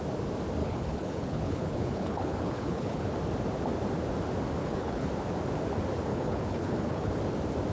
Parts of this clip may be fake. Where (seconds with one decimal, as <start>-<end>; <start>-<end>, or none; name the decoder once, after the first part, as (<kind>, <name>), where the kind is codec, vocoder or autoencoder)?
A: 0.6-3.1 (codec, HILCodec); 4.6-5.1; 6.1-7.1